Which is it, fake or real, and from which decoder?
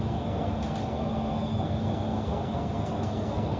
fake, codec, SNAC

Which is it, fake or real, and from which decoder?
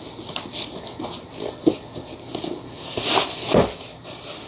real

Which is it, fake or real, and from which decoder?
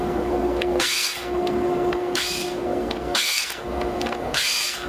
fake, codec, SNAC